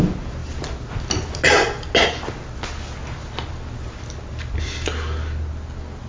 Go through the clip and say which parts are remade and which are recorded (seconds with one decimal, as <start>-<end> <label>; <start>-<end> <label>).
0.0-6.1 recorded